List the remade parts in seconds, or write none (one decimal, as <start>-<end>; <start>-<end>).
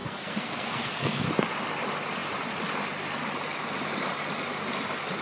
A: 0.0-1.3